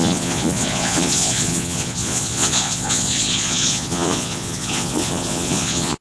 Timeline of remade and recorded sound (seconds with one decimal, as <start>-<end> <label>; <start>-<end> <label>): 0.0-6.0 remade